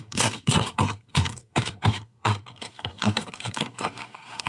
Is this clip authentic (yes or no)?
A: no